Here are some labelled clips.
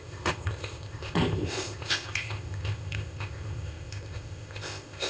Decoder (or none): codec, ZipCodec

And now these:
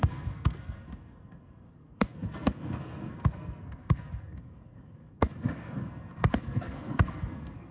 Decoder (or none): codec, SNAC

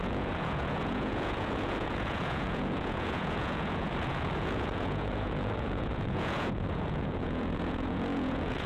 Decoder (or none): vocoder, Vocos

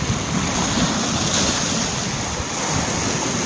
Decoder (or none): none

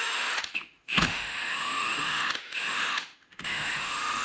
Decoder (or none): autoencoder, DAC-VAE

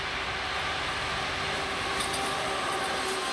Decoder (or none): none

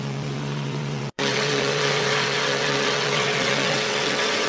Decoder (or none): vocoder, WaveNeXt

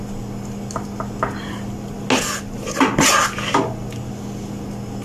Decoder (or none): none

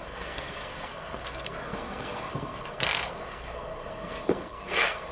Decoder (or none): codec, SNAC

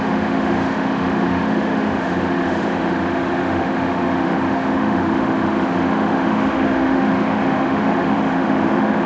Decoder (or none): autoencoder, DAC-VAE